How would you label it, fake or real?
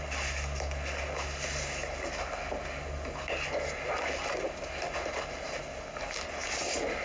real